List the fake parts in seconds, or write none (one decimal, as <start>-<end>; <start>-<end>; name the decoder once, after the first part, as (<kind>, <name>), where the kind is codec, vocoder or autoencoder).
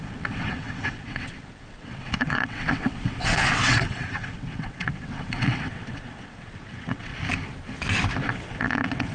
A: 0.0-7.1 (vocoder, WaveNeXt); 8.6-9.1